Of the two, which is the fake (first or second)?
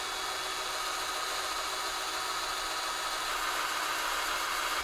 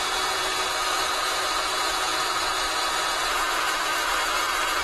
second